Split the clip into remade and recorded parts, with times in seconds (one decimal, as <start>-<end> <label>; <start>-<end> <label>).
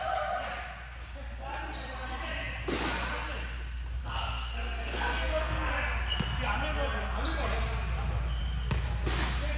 0.0-4.0 recorded; 4.0-5.7 remade; 5.7-9.6 recorded